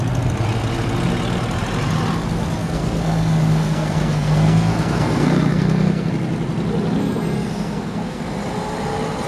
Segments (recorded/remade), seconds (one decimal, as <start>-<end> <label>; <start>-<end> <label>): 0.0-2.6 recorded; 2.6-6.1 remade; 6.1-7.0 recorded; 7.0-8.2 remade; 8.2-9.3 recorded